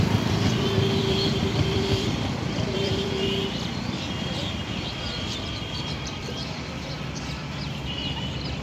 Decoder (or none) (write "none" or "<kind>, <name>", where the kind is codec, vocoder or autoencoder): vocoder, BigVGAN v2